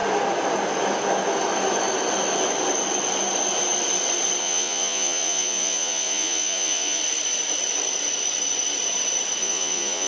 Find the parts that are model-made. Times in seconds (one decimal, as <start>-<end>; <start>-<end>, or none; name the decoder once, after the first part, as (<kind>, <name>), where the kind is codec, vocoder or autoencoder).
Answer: 4.4-7.0 (vocoder, Vocos); 9.4-10.1